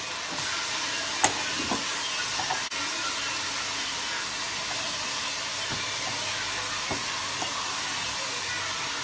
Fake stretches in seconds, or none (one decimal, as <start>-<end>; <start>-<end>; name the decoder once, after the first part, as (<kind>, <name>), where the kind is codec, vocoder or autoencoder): none